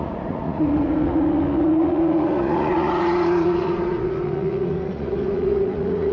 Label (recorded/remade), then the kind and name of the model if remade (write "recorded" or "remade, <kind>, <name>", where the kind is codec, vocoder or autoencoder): remade, vocoder, Vocos